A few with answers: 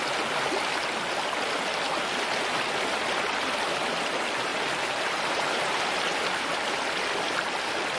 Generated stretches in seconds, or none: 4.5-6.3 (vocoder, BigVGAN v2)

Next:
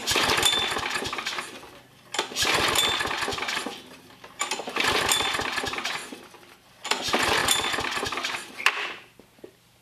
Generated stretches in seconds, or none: 3.3-4.9 (vocoder, BigVGAN v2)

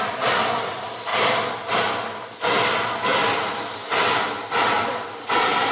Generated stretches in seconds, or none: none